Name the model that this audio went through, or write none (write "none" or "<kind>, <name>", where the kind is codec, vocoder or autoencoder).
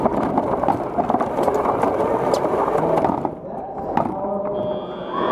none